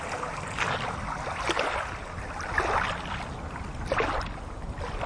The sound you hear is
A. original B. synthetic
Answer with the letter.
A